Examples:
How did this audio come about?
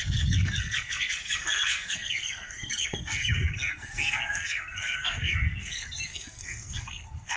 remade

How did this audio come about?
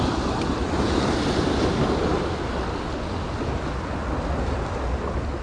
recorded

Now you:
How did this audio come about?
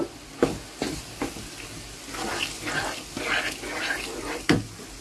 recorded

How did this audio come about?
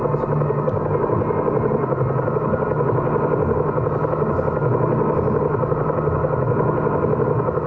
recorded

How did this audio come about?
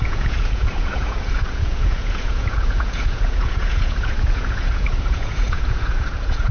remade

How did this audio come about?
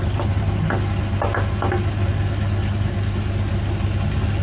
recorded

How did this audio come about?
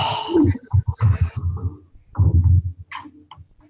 recorded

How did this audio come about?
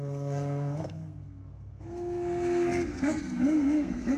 remade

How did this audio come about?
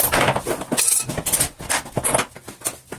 recorded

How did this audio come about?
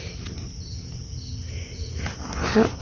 recorded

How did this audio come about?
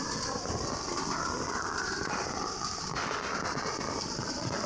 recorded